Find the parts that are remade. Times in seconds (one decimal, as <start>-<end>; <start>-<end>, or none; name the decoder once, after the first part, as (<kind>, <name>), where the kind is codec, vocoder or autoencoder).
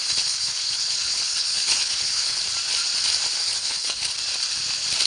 0.0-2.4 (codec, HILCodec); 3.4-4.0